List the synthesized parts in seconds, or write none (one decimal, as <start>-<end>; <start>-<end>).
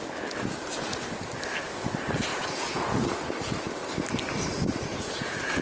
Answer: 2.3-3.1; 4.8-5.6